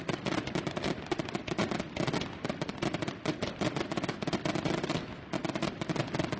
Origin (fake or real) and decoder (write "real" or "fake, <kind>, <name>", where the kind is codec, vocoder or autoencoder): real